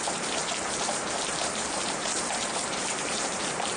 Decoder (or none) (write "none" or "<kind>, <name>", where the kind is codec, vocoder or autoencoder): vocoder, BigVGAN v2